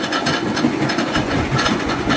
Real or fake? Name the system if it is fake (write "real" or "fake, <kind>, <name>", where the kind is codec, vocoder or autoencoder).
fake, vocoder, Vocos